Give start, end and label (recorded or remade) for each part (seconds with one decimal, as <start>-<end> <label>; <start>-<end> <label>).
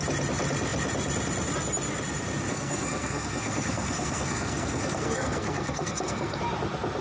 0.0-2.5 recorded; 2.5-6.4 remade; 6.4-7.0 recorded